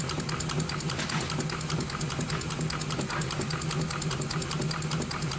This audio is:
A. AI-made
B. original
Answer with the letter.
B